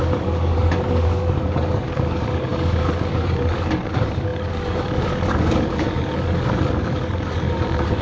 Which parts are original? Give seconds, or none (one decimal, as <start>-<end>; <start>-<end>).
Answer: none